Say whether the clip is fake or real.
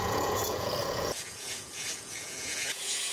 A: fake